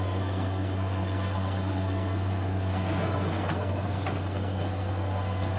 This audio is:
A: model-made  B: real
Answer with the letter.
A